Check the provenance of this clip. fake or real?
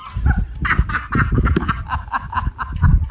real